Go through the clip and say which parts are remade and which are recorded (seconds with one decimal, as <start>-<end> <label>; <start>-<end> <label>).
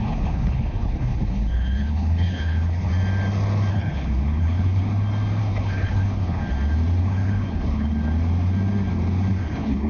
0.0-2.9 remade; 2.9-3.7 recorded; 3.7-4.8 remade; 4.8-5.4 recorded; 5.4-6.4 remade; 6.4-7.0 recorded; 7.0-7.9 remade; 7.9-9.3 recorded; 9.3-9.9 remade